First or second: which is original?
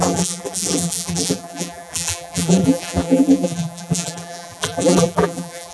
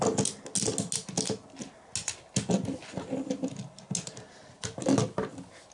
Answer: second